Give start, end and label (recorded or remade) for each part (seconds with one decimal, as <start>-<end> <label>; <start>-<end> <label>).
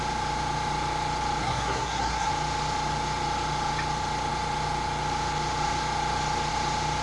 0.0-1.4 recorded; 1.4-2.3 remade; 2.3-7.0 recorded